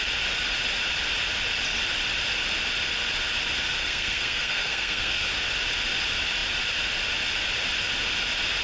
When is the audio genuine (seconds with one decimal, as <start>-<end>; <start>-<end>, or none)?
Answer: 0.0-3.8; 5.3-8.6